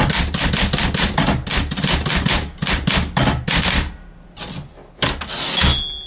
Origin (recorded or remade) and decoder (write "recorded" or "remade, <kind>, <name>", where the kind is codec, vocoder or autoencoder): recorded